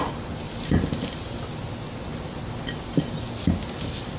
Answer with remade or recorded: recorded